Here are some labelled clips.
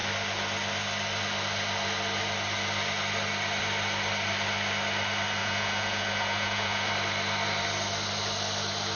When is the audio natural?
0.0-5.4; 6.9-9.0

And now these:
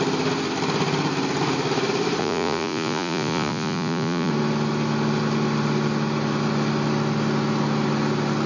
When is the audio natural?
0.0-2.2; 4.3-8.5

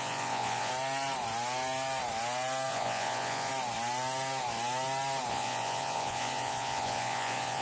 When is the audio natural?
0.7-2.7; 3.5-5.3

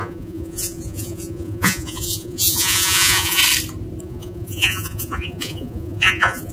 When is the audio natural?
3.4-4.0

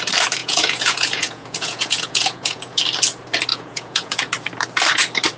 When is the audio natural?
0.0-0.4; 2.8-3.5; 4.2-5.4

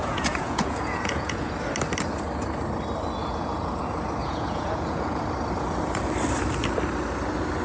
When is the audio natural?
1.5-3.2; 3.8-4.2; 5.2-7.6